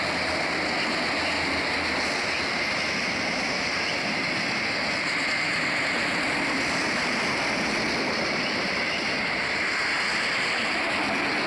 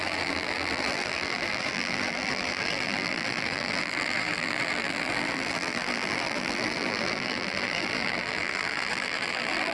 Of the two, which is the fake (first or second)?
second